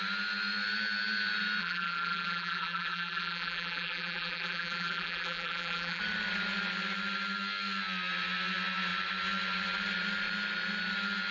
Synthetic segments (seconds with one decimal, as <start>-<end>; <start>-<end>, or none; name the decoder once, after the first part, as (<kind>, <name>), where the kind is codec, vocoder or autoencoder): 1.6-6.0 (vocoder, BigVGAN v2)

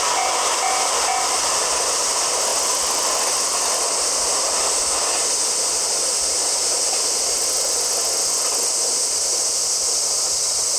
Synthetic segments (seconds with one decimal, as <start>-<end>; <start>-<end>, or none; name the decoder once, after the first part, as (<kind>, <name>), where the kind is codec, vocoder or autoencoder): none

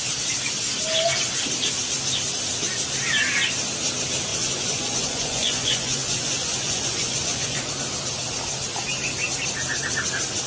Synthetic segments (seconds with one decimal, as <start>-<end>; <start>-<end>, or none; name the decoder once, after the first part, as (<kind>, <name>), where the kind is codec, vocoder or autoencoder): 4.3-7.7 (vocoder, Vocos)

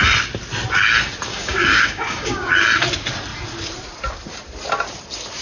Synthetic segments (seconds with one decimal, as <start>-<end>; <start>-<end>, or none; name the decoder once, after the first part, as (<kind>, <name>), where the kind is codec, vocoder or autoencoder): 1.3-2.5 (codec, DAC)

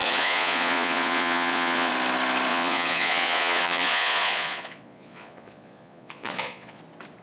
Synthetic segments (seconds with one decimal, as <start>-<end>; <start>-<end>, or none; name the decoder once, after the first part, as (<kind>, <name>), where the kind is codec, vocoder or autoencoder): 0.0-1.9 (vocoder, Vocos); 2.5-6.8